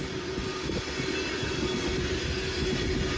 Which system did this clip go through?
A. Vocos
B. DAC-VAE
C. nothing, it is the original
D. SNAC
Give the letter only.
C